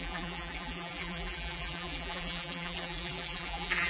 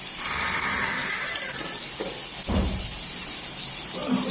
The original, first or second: second